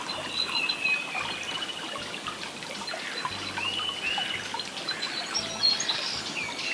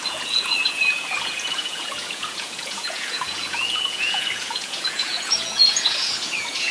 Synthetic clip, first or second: second